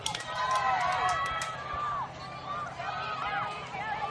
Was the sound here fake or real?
real